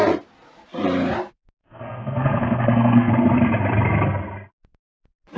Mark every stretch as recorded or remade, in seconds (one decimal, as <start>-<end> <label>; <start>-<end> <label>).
0.0-1.6 recorded; 1.6-3.1 remade; 3.1-5.4 recorded